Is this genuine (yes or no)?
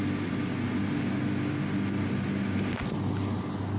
yes